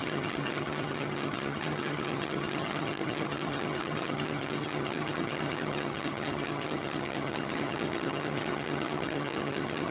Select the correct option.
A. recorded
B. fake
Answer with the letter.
B